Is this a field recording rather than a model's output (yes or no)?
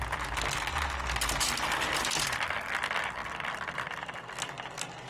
yes